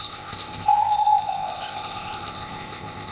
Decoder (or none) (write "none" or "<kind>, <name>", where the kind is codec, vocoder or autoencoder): codec, ZipCodec